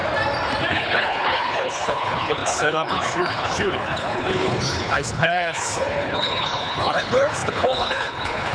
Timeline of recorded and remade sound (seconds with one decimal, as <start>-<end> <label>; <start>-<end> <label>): 0.0-0.7 recorded; 0.7-8.5 remade